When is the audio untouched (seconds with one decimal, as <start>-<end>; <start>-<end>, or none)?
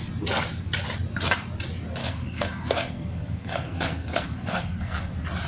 0.0-2.0; 5.1-5.5